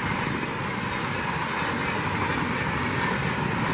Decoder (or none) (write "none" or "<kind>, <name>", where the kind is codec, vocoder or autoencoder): none